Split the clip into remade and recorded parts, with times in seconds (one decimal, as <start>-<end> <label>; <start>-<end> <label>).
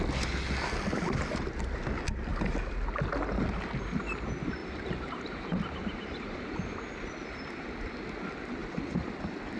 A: 0.0-2.3 recorded; 2.3-2.9 remade; 2.9-4.6 recorded; 4.6-6.4 remade; 6.4-9.6 recorded